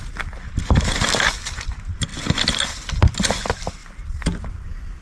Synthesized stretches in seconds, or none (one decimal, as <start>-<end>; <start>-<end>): none